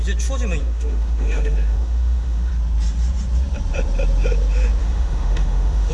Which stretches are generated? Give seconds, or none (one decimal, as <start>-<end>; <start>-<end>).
0.6-2.5; 4.8-5.9